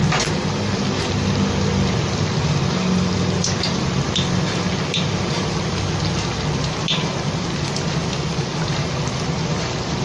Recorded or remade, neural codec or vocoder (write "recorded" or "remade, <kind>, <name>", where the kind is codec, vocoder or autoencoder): recorded